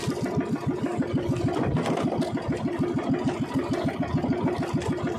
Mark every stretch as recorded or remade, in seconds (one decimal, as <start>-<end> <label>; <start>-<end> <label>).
0.0-5.2 recorded